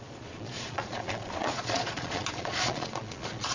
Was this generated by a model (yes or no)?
yes